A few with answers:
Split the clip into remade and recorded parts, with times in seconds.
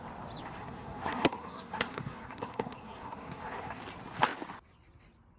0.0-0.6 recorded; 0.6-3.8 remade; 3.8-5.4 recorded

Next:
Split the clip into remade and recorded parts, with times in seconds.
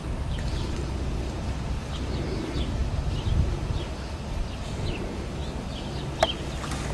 0.0-6.9 recorded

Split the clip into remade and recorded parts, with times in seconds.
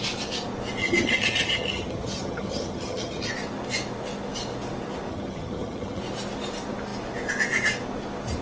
0.0-0.8 recorded; 0.8-3.3 remade; 3.3-5.1 recorded; 5.1-6.0 remade; 6.0-8.4 recorded